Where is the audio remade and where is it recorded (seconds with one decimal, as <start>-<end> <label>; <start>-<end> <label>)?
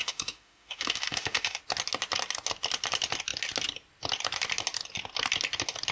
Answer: 0.0-1.6 remade; 1.6-5.9 recorded